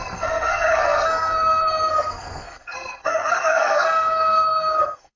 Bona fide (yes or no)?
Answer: no